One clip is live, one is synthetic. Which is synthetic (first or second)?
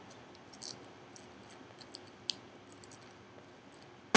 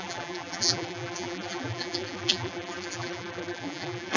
second